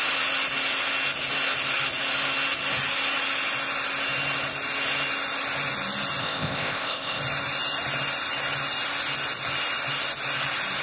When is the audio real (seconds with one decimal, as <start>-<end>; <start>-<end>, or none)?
0.0-6.2; 7.2-10.8

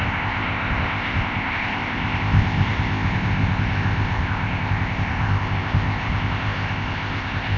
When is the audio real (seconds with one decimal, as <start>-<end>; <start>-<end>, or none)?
none

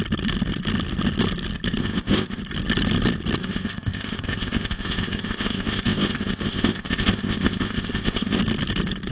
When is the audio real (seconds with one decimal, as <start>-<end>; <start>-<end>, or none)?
0.0-1.8; 2.4-3.4; 8.4-9.1

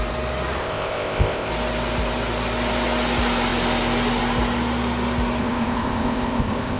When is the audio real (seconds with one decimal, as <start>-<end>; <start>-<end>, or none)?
0.0-0.6; 1.5-5.4